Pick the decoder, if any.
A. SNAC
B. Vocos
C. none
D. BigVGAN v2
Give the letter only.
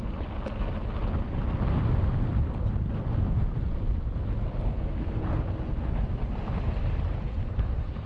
C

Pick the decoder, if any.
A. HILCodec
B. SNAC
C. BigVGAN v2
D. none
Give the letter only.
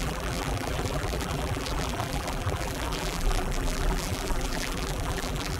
C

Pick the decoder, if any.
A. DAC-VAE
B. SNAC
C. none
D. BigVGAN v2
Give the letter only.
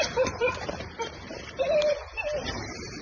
D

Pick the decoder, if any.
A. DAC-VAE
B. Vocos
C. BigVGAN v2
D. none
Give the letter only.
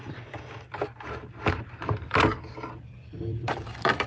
C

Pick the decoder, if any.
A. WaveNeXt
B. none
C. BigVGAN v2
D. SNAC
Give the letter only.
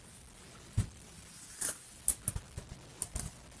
B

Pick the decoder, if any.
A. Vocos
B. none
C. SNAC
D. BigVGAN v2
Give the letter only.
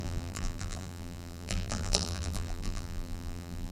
D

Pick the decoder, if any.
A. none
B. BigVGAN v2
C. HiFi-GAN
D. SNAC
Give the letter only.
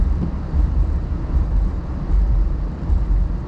B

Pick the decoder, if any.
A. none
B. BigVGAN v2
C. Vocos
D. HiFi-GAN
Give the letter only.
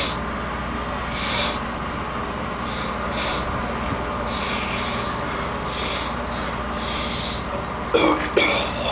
A